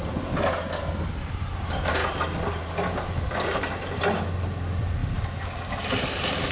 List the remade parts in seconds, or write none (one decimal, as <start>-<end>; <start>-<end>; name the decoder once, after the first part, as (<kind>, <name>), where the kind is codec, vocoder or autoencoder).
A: none